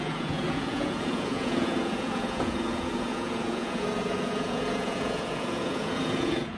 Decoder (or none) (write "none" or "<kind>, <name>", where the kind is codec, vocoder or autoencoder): vocoder, Vocos